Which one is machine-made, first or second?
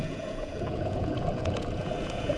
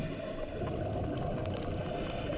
first